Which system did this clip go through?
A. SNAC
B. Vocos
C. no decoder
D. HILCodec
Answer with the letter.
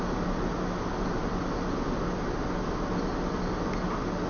C